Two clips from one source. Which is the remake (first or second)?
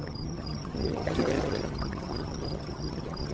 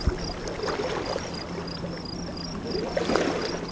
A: first